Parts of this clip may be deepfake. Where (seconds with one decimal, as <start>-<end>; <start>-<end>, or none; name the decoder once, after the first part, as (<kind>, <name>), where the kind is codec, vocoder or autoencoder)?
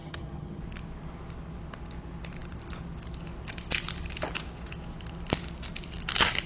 0.0-0.6 (vocoder, HiFi-GAN)